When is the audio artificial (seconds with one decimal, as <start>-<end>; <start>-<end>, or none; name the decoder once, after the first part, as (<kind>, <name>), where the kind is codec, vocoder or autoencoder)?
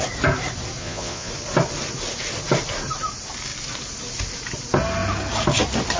0.8-1.3 (vocoder, Vocos)